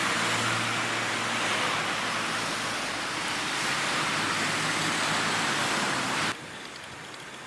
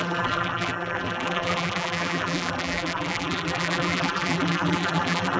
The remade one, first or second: second